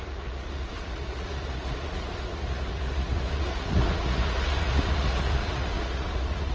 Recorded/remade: remade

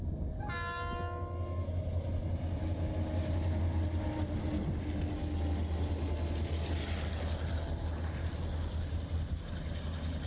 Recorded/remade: recorded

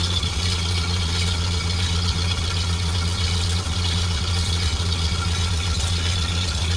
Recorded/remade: remade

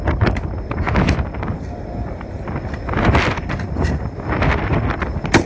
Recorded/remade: recorded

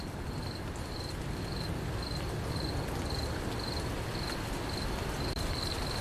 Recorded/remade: recorded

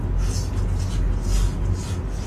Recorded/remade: recorded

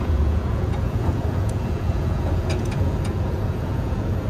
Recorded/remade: remade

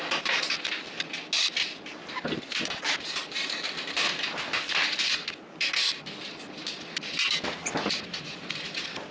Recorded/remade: recorded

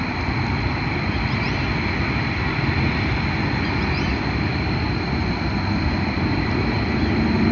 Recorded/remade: recorded